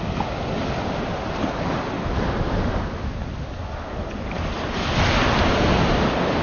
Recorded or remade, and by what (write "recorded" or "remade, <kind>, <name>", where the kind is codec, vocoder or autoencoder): recorded